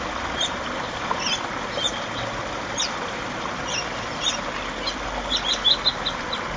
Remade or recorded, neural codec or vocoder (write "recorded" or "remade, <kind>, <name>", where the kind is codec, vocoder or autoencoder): recorded